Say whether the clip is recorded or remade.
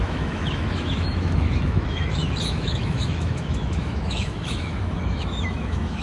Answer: remade